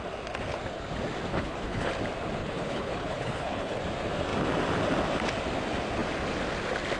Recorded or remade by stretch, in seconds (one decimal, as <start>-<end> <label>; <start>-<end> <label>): 0.0-1.3 recorded; 1.3-1.9 remade; 1.9-2.4 recorded; 2.4-3.8 remade; 3.8-7.0 recorded